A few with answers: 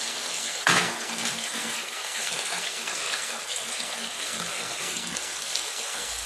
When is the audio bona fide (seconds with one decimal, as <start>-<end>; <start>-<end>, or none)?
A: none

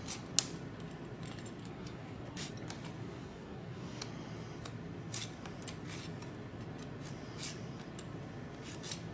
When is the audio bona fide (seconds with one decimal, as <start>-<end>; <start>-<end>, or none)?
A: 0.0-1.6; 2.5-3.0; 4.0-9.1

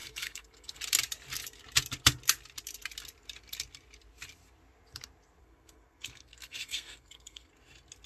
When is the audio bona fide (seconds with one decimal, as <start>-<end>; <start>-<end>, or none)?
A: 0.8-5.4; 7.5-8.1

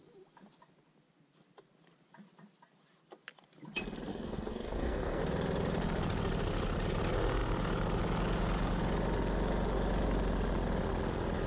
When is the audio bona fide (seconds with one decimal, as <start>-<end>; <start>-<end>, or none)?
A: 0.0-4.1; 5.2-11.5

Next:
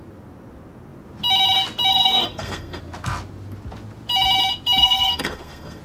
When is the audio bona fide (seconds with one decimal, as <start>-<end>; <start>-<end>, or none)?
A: 0.0-1.9; 2.8-4.8